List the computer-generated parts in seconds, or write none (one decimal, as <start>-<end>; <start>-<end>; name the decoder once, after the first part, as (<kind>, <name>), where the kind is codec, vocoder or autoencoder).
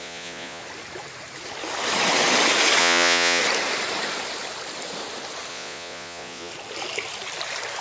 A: 0.0-0.6 (vocoder, Vocos); 2.8-3.4; 5.5-6.5